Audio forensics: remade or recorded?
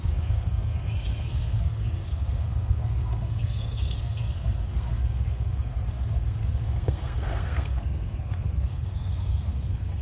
remade